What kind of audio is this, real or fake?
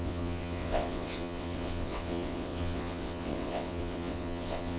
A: fake